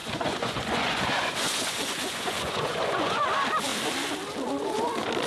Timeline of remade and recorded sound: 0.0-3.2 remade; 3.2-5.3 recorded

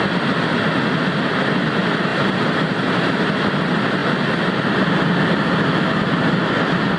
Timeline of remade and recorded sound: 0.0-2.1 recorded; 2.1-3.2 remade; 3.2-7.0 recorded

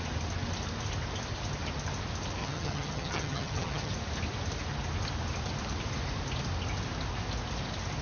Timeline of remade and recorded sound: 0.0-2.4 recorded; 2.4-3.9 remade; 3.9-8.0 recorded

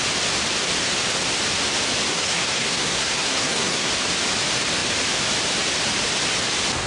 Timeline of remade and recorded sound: 0.0-2.1 recorded; 2.1-3.9 remade; 3.9-6.9 recorded